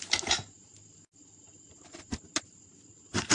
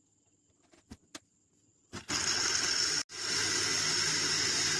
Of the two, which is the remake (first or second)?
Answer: first